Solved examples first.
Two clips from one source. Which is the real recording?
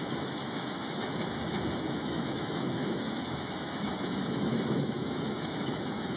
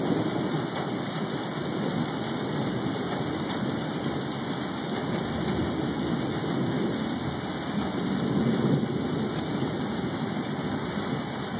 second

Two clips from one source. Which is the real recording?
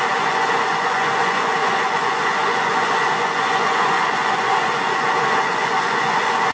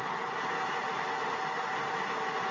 second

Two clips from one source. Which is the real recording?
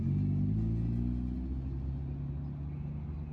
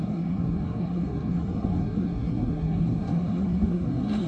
first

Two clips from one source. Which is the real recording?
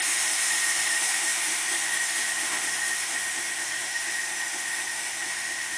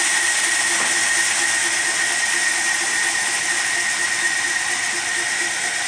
second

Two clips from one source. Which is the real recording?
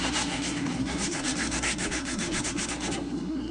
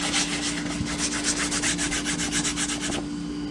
second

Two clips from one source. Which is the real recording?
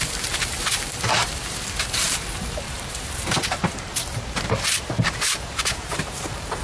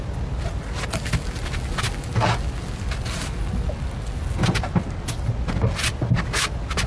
second